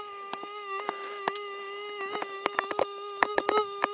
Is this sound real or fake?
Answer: fake